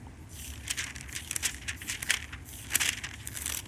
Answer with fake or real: real